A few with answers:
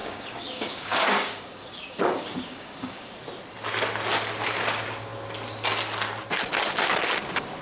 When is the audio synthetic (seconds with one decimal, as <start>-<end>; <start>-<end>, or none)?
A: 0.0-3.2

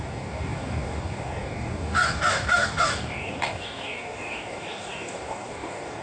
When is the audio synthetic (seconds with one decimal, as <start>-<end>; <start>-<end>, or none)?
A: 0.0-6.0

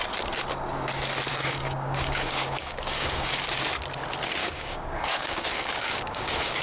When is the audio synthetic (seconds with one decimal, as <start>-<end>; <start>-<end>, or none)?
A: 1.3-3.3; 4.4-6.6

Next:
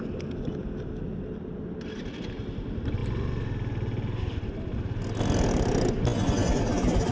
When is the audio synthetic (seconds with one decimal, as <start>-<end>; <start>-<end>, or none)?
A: none

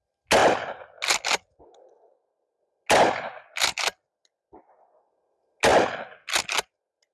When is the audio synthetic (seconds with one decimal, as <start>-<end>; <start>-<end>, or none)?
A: none